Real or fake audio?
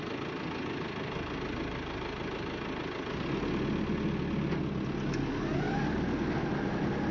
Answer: real